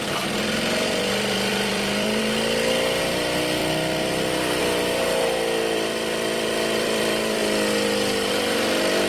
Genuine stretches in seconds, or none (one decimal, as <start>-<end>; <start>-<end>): 2.2-3.0; 3.6-4.6; 7.4-8.3